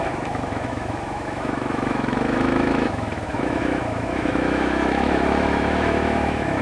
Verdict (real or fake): fake